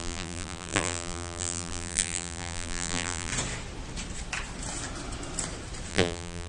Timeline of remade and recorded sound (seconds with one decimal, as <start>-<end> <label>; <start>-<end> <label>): 0.0-3.3 remade; 3.3-5.9 recorded; 5.9-6.5 remade